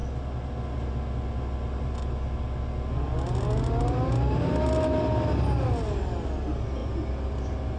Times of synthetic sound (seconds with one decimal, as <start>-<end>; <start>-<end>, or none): none